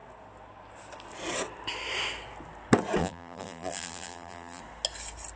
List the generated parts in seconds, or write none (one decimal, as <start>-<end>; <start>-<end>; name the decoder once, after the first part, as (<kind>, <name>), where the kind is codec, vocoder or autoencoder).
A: 3.0-4.6 (vocoder, BigVGAN v2)